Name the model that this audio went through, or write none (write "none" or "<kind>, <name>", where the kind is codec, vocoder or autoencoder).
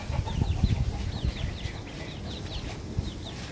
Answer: none